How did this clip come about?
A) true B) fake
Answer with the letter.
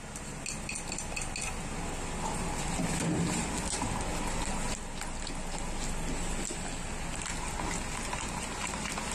A